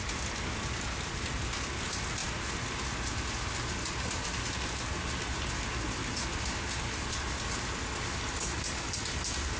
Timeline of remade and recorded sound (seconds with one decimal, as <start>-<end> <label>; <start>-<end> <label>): 0.0-9.6 recorded

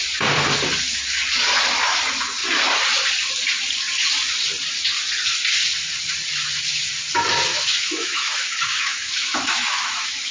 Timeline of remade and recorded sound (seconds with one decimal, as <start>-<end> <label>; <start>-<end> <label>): 0.0-7.5 recorded; 7.5-10.3 remade